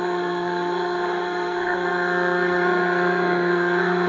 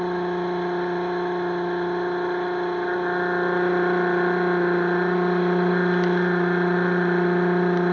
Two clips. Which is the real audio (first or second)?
second